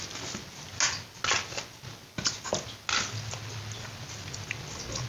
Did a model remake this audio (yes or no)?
no